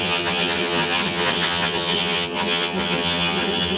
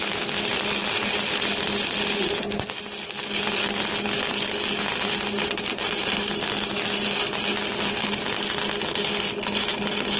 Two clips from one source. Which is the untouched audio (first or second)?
second